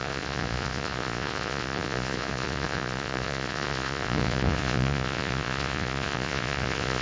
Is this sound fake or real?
fake